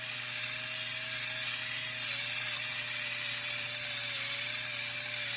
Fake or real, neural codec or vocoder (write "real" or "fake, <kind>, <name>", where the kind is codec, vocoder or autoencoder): real